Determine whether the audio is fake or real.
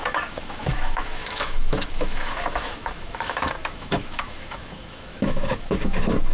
fake